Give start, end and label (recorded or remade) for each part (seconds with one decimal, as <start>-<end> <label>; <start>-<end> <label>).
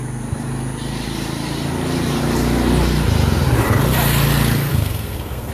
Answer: 0.0-4.7 recorded; 4.7-5.5 remade